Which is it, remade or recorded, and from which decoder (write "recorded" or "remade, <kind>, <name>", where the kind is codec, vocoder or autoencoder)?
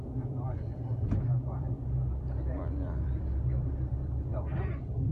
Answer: remade, vocoder, BigVGAN v2